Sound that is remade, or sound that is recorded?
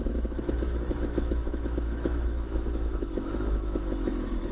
remade